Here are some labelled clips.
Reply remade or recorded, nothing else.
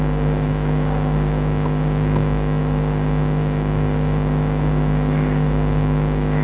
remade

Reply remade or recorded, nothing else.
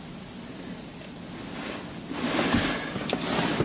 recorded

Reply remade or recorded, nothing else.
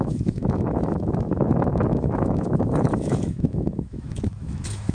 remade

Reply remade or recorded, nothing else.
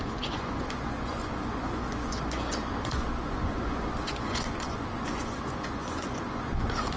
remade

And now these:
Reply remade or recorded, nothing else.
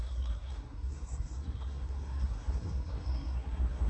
remade